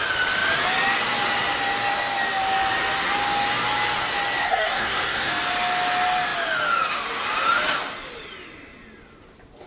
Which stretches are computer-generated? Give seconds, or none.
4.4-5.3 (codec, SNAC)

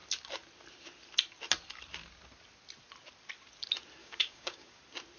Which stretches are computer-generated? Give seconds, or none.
4.0-4.8 (codec, DAC)

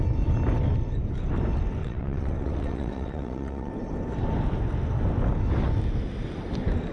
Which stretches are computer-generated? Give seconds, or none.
1.8-3.7 (vocoder, WaveNeXt)

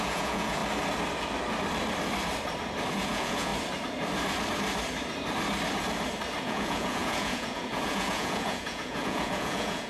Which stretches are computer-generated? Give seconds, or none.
0.0-0.6 (vocoder, Vocos); 2.9-3.5; 6.4-9.9

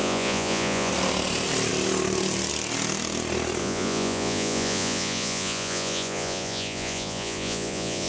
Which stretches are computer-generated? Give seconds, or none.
0.0-0.9 (vocoder, Vocos); 3.6-8.1

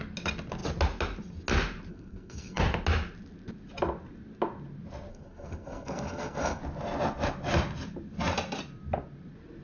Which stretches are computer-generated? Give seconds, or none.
1.9-2.6 (codec, SNAC); 5.1-6.6